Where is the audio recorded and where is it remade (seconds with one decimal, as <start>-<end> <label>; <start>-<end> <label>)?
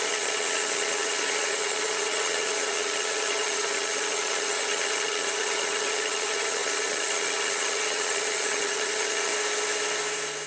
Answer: 0.0-9.3 remade; 9.3-10.5 recorded